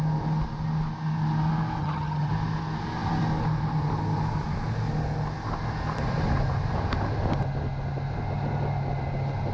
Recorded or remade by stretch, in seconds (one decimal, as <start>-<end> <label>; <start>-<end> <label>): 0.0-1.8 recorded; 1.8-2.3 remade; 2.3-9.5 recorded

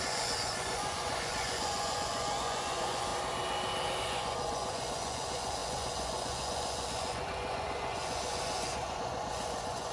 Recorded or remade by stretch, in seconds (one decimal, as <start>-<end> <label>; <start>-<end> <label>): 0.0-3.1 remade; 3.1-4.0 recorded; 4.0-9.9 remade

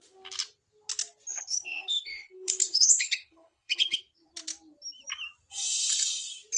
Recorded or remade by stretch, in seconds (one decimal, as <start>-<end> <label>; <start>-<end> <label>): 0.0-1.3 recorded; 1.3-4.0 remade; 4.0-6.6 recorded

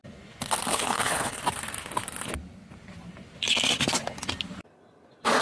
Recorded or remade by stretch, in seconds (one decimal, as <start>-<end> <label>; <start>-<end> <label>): 0.0-0.7 recorded; 0.7-1.4 remade; 1.4-5.4 recorded

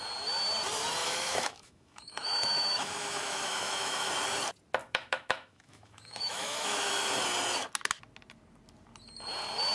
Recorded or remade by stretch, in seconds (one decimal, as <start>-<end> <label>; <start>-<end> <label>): 0.0-1.0 recorded; 1.0-4.1 remade; 4.1-4.8 recorded; 4.8-6.9 remade; 6.9-9.7 recorded

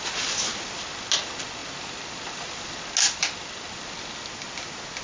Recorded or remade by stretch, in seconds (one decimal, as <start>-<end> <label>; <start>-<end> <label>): 0.0-5.0 recorded

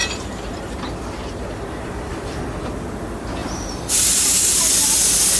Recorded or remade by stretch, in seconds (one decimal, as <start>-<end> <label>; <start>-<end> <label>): 0.0-2.4 remade; 2.4-3.4 recorded; 3.4-4.6 remade; 4.6-5.4 recorded